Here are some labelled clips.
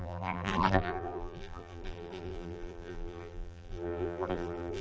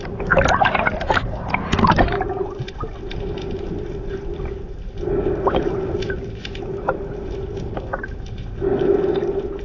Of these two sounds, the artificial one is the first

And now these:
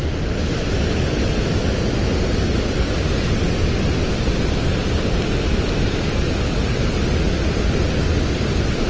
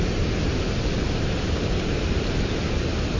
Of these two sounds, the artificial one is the second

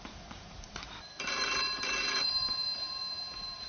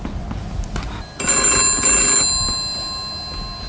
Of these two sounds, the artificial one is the first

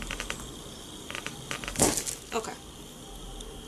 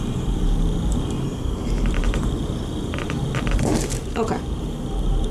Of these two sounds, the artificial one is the second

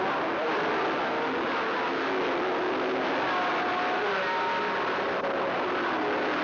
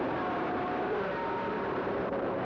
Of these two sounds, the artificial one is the second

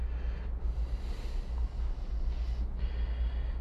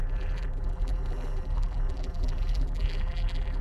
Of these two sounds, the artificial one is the second